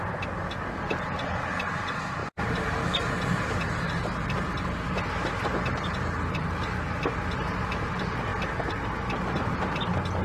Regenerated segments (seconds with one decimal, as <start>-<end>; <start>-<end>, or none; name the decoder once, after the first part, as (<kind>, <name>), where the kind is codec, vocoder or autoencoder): 2.2-3.1 (vocoder, BigVGAN v2)